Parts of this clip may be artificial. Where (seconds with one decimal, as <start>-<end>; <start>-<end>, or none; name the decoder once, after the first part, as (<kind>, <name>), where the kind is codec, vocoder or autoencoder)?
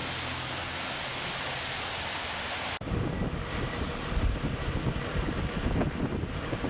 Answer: none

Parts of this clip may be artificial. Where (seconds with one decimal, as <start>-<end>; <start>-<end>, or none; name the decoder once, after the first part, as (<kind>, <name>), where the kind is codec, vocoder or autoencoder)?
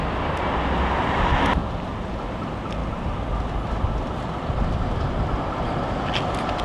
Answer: 2.8-6.6 (vocoder, BigVGAN v2)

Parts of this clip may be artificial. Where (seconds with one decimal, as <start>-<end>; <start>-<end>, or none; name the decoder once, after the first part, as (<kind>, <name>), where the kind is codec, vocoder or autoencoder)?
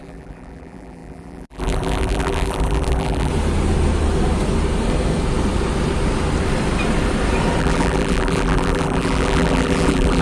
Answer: 0.0-3.3 (vocoder, BigVGAN v2); 7.6-10.2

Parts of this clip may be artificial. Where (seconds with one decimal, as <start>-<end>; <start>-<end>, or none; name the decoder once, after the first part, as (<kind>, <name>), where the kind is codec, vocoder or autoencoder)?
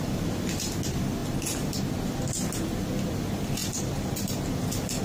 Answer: 3.6-5.0 (vocoder, BigVGAN v2)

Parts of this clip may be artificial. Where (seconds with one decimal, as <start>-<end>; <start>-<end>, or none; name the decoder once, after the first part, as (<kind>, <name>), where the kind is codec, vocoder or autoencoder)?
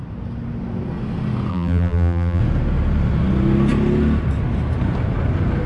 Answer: 1.5-2.4 (vocoder, BigVGAN v2)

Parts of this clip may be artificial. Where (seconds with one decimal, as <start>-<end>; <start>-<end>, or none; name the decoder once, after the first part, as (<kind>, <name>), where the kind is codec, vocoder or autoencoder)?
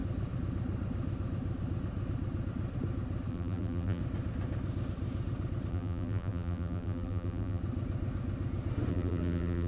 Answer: 3.3-4.0 (vocoder, BigVGAN v2); 5.7-7.6; 8.9-9.7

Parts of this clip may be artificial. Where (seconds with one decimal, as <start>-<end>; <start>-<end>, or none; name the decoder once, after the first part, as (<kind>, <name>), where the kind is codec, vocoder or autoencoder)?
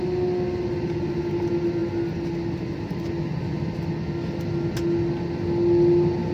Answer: none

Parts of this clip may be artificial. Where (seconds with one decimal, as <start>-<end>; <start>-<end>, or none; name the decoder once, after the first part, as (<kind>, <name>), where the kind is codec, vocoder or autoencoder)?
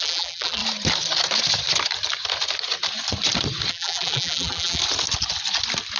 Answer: 0.0-0.6 (vocoder, BigVGAN v2); 3.7-4.8